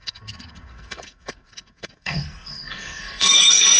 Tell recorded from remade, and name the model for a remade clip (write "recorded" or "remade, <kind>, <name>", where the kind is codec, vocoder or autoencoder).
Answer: remade, codec, SNAC